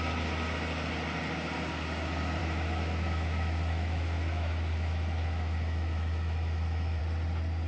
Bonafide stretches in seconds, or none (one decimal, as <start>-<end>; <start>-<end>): 0.0-2.4; 7.0-7.7